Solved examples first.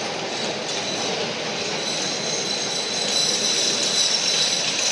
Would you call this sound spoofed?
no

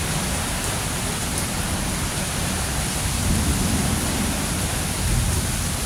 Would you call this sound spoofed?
no